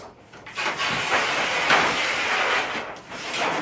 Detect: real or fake real